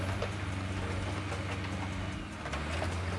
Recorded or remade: recorded